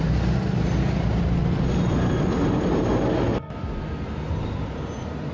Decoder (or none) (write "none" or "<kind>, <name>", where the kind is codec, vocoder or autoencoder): none